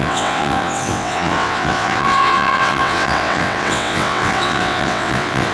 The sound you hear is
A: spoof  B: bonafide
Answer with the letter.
A